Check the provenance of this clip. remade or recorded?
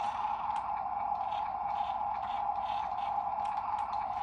remade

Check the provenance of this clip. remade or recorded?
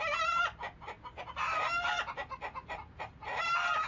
recorded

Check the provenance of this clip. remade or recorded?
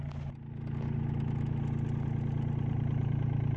recorded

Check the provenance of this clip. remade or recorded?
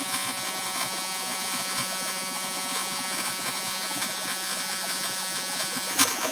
remade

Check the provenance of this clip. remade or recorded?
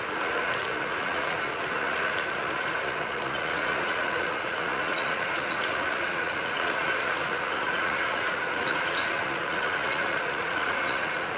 remade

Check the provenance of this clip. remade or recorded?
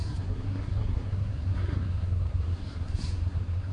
remade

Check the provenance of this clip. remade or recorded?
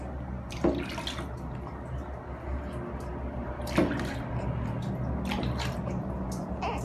recorded